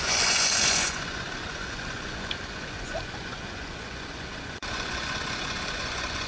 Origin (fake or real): fake